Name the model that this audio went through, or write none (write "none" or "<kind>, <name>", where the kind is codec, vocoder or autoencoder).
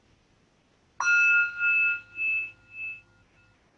none